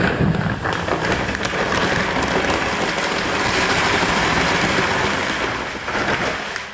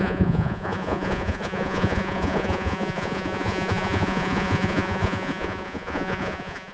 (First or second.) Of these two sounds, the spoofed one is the second